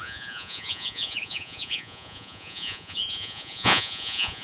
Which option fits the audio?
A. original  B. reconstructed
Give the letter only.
B